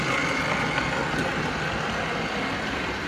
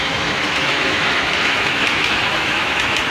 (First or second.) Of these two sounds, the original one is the first